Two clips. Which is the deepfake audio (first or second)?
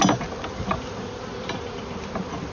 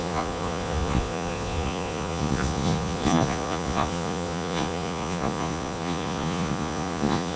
second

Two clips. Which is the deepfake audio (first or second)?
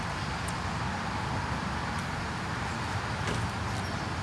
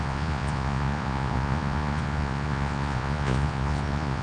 second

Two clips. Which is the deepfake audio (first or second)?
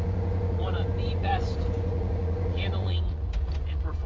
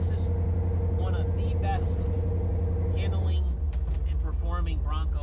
first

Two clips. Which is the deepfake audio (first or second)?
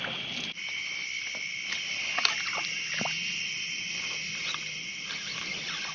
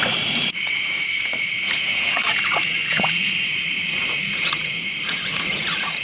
second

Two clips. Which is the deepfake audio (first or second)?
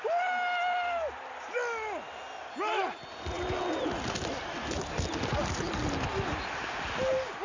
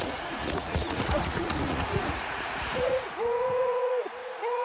second